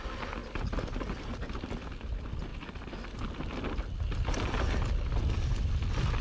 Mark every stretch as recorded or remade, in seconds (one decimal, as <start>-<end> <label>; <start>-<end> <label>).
0.0-6.2 recorded